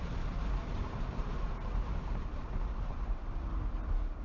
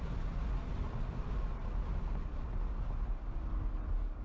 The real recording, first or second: second